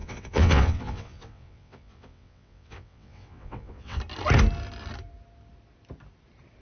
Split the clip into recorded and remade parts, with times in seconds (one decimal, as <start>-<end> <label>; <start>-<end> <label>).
0.0-4.0 remade; 4.0-6.6 recorded

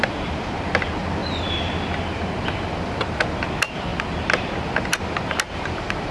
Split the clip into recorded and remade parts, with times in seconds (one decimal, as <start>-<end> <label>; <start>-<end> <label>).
0.0-6.1 recorded

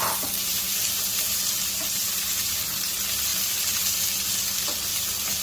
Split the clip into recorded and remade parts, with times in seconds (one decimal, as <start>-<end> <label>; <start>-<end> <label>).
0.0-0.5 recorded; 0.5-2.2 remade; 2.2-3.3 recorded; 3.3-4.4 remade; 4.4-5.4 recorded

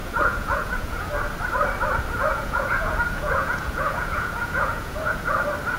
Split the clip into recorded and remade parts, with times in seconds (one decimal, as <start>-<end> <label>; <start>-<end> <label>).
0.0-1.1 remade; 1.1-2.3 recorded; 2.3-5.3 remade; 5.3-5.8 recorded

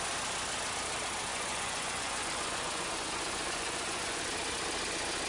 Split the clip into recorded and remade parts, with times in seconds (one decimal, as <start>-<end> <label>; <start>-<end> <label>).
0.0-1.3 recorded; 1.3-4.2 remade; 4.2-5.3 recorded